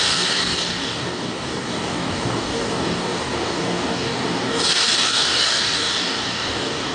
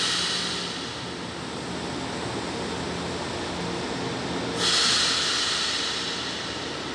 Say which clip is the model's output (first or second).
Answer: first